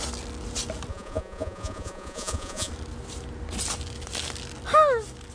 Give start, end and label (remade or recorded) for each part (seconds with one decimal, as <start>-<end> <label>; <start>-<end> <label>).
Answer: 0.0-0.9 recorded; 0.9-2.7 remade; 2.7-5.3 recorded